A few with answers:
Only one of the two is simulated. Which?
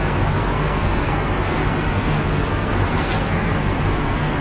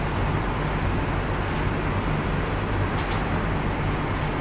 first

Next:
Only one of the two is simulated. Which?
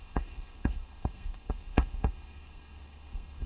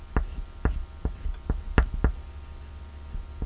first